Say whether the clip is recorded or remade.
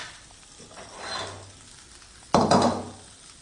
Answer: recorded